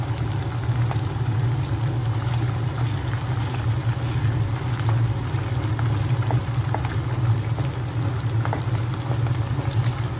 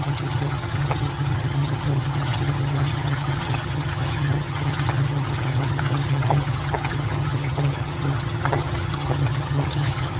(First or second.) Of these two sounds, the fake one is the second